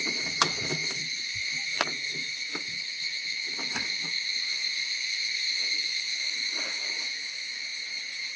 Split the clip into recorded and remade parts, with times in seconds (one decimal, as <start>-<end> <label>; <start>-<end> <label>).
0.0-7.7 remade; 7.7-8.4 recorded